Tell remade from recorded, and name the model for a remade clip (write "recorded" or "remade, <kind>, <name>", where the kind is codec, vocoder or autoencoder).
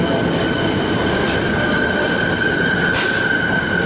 remade, vocoder, BigVGAN v2